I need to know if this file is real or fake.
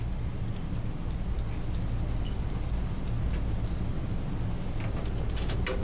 real